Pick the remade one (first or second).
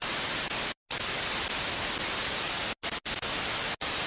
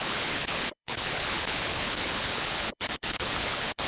second